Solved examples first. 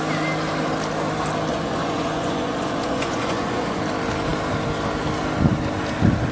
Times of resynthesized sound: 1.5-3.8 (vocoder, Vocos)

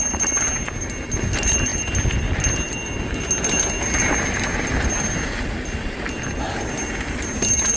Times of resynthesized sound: none

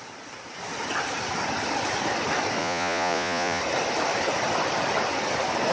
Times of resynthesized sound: 2.6-3.6 (vocoder, Vocos)

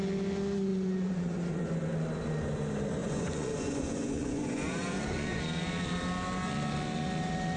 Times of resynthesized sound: 0.7-1.6 (vocoder, Vocos); 3.0-5.4

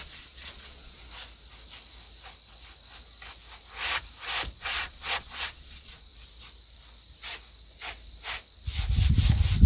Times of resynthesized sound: 0.0-1.0 (vocoder, Vocos); 4.6-6.1

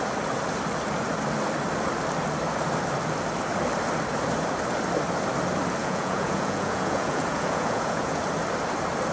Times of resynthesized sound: 5.8-8.2 (vocoder, Vocos)